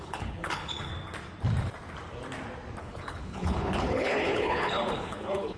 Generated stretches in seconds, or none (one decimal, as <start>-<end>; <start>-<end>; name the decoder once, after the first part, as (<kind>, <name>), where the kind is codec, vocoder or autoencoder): 0.0-0.9 (codec, HILCodec); 2.8-5.6